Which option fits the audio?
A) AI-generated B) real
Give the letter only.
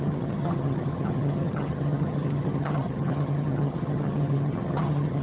A